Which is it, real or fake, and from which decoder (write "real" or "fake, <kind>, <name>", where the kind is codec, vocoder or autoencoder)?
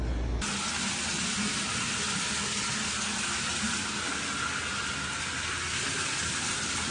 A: real